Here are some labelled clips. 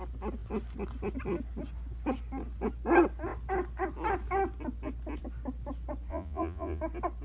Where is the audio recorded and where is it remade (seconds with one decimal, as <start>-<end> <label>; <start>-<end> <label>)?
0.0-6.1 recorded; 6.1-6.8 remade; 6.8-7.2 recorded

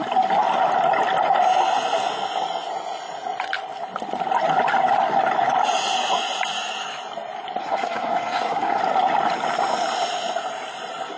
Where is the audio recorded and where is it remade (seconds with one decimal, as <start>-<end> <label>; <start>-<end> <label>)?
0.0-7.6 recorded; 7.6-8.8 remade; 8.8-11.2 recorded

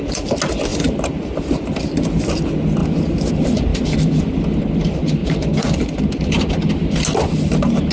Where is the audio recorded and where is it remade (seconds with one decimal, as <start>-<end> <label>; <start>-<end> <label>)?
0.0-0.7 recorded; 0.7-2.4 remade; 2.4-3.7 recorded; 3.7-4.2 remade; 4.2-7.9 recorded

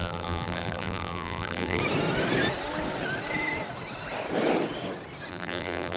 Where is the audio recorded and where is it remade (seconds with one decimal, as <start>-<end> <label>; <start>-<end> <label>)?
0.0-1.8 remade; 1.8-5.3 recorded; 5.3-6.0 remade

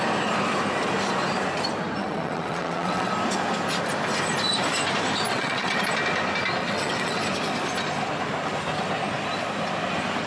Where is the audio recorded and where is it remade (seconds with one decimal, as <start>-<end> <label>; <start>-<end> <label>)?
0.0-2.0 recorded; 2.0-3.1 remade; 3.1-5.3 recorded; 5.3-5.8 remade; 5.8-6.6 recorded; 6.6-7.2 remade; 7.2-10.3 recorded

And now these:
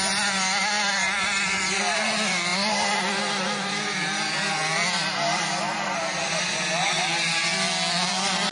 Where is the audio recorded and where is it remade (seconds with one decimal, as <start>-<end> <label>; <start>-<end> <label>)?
0.0-7.1 remade; 7.1-8.5 recorded

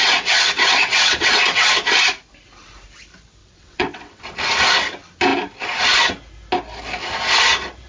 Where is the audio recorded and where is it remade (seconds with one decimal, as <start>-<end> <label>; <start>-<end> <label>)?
0.0-1.7 remade; 1.7-3.4 recorded; 3.4-4.2 remade; 4.2-7.9 recorded

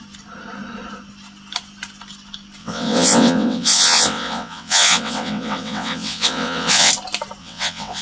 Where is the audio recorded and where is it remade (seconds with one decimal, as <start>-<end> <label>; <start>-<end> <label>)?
0.0-2.6 recorded; 2.6-6.9 remade; 6.9-7.4 recorded; 7.4-8.0 remade